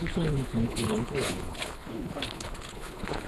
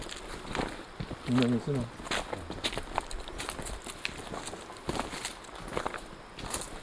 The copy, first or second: first